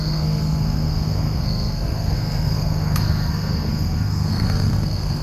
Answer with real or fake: fake